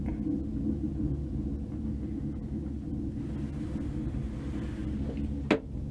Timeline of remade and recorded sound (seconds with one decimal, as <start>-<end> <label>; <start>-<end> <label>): 0.0-5.9 recorded